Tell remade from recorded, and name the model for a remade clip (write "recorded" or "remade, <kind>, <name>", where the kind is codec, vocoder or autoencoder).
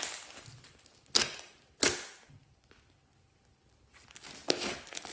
recorded